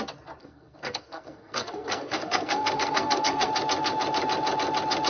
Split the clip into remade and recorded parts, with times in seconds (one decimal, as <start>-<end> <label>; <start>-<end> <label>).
0.0-0.4 recorded; 0.4-3.5 remade; 3.5-5.1 recorded

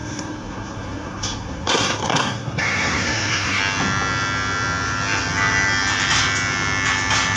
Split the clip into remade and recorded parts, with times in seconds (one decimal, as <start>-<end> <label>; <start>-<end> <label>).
0.0-3.6 remade; 3.6-7.4 recorded

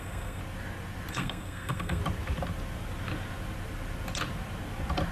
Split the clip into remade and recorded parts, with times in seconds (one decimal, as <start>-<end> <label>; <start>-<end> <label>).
0.0-0.4 remade; 0.4-1.1 recorded; 1.1-2.0 remade; 2.0-5.1 recorded

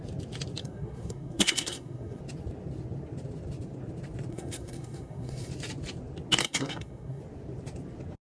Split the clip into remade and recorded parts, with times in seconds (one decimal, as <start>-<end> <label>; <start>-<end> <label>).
0.0-0.6 recorded; 0.6-2.2 remade; 2.2-4.3 recorded; 4.3-5.5 remade; 5.5-6.4 recorded; 6.4-7.2 remade; 7.2-8.4 recorded

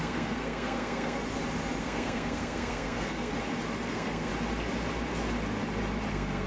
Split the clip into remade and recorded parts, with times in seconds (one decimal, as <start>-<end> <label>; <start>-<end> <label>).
0.0-1.2 remade; 1.2-1.8 recorded; 1.8-3.3 remade; 3.3-3.9 recorded; 3.9-4.3 remade; 4.3-6.1 recorded; 6.1-6.5 remade

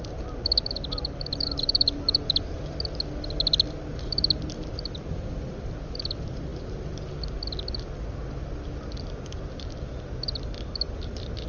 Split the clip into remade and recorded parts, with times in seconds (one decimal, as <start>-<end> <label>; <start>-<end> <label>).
0.0-11.5 recorded

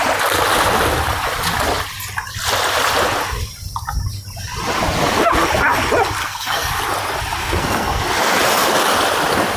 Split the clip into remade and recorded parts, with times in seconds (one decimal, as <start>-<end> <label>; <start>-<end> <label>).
0.0-6.2 recorded; 6.2-6.7 remade; 6.7-7.4 recorded; 7.4-8.0 remade; 8.0-9.6 recorded